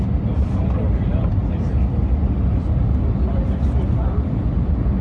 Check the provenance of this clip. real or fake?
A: real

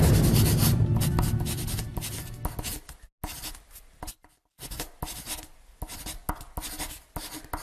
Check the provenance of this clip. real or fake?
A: real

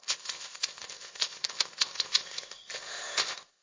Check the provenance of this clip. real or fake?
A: fake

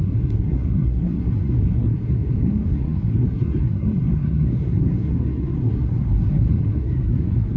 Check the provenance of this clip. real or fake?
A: fake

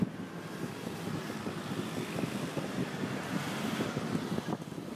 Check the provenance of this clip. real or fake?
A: real